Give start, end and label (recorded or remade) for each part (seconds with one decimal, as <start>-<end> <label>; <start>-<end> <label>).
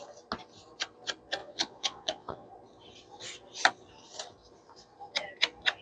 0.0-1.4 recorded; 1.4-2.5 remade; 2.5-5.8 recorded